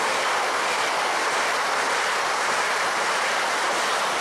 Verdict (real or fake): fake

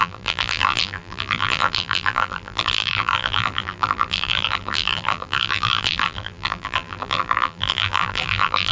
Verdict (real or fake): fake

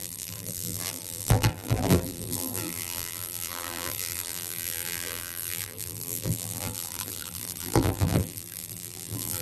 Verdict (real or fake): fake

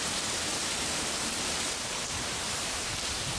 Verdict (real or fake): fake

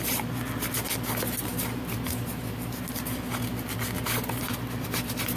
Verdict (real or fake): real